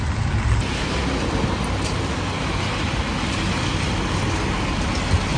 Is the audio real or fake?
real